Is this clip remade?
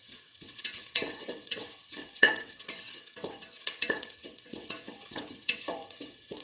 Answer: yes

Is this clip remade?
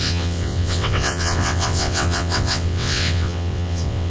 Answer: yes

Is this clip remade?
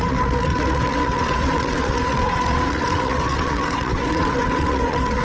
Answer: yes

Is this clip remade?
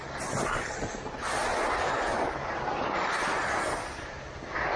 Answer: no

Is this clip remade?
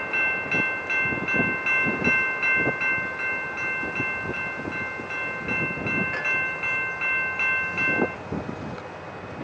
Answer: no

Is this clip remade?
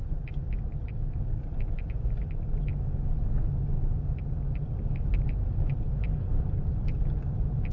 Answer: no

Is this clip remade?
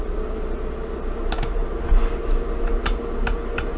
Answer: no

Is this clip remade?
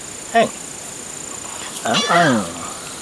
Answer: no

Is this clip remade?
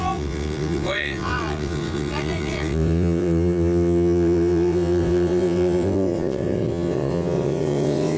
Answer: yes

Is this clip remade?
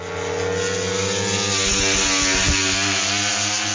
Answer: no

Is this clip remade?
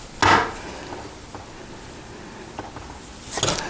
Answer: no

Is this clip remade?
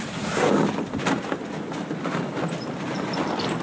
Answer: no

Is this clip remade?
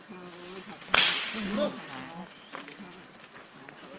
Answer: no